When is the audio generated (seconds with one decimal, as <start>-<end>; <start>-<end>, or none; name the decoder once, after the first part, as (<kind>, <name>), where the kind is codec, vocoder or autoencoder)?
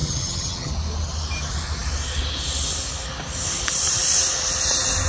0.0-0.7 (vocoder, HiFi-GAN)